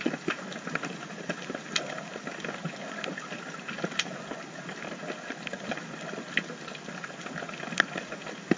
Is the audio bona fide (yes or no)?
yes